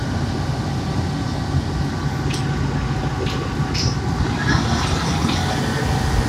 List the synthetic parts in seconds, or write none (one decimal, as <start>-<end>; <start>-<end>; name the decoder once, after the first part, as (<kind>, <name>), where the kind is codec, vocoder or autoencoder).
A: none

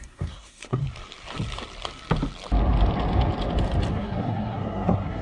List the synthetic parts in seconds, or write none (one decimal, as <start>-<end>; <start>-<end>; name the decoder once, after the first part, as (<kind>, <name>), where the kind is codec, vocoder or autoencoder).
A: 0.0-0.8 (codec, SNAC); 3.9-5.2